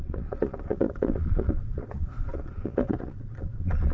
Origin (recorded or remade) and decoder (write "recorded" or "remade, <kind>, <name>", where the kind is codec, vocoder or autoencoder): remade, vocoder, Vocos